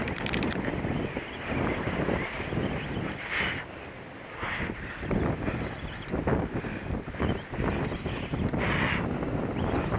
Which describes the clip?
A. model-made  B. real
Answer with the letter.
B